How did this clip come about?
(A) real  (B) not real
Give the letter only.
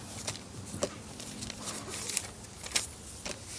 A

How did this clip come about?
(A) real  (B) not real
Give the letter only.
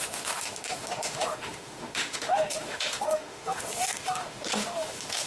B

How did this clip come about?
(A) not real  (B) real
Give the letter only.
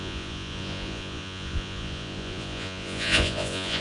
A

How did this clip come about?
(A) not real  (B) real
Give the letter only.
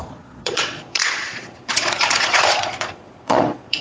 A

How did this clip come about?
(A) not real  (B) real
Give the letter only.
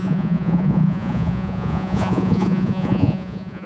A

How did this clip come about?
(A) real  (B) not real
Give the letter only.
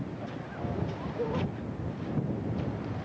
A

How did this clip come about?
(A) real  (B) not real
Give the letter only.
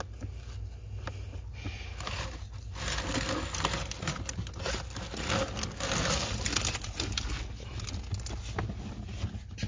A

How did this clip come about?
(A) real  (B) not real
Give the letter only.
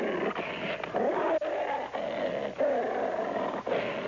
A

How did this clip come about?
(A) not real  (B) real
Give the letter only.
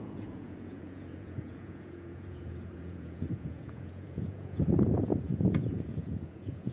A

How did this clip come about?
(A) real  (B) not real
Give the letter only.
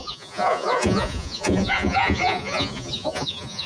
B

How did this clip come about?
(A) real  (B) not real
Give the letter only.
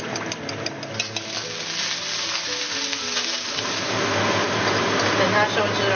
A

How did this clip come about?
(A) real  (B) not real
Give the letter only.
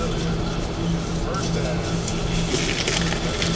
A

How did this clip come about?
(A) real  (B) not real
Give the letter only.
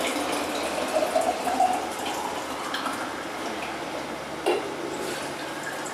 A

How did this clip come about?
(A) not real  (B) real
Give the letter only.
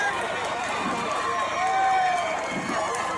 B